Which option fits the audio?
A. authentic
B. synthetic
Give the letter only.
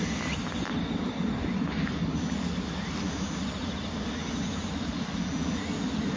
A